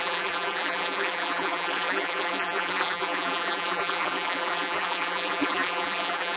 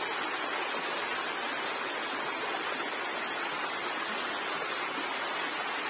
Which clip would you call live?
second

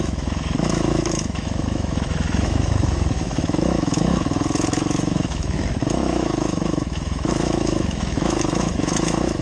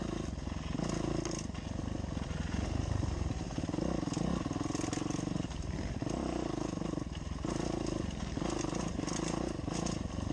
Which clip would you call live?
second